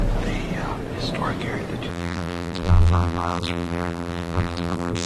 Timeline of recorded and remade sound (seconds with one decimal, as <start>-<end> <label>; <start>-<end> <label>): 0.0-1.9 recorded; 1.9-5.1 remade